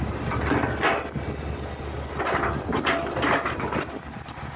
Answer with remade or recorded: recorded